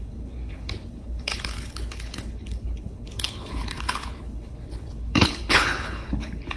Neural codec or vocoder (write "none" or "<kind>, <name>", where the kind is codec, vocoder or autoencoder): codec, HILCodec